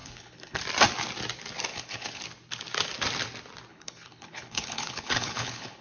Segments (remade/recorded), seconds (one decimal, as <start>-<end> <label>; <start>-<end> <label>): 0.0-0.6 remade; 0.6-1.7 recorded; 1.7-2.2 remade; 2.2-3.7 recorded; 3.7-5.8 remade